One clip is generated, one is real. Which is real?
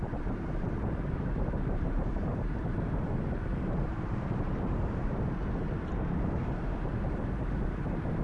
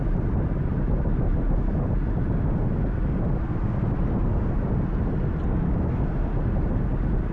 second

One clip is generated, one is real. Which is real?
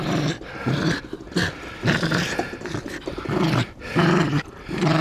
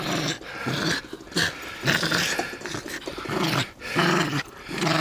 second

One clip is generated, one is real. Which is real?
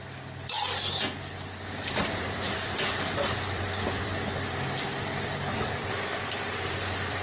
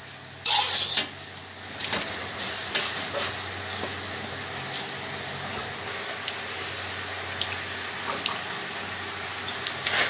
second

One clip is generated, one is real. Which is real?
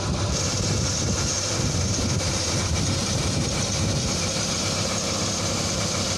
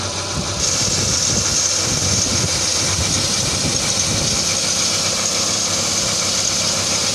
second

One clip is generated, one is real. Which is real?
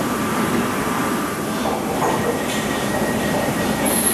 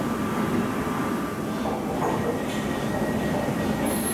second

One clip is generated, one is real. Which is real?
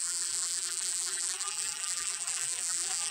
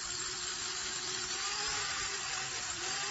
second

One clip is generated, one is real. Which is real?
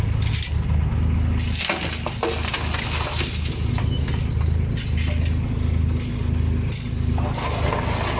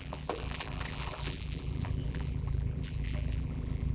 first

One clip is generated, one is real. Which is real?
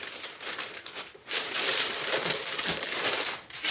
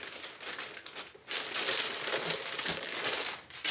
second